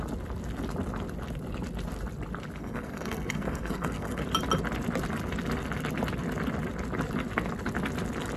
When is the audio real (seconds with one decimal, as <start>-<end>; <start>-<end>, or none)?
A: 0.0-2.6; 4.2-8.4